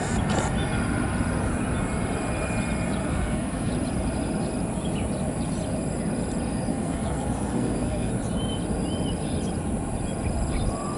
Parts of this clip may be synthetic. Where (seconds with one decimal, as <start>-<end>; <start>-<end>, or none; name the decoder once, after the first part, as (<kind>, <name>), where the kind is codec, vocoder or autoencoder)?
3.0-3.7 (codec, SNAC); 6.7-8.1